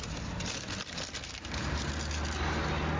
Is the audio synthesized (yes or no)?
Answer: no